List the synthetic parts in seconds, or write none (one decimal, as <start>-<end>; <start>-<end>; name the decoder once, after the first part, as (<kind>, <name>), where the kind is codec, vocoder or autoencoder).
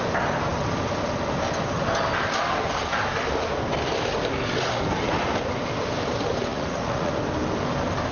6.5-7.1 (vocoder, Vocos)